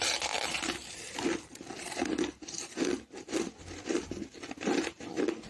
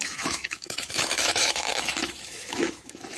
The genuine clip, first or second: first